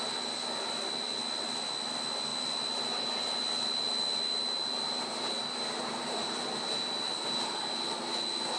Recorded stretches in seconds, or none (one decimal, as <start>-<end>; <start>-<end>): 0.0-8.6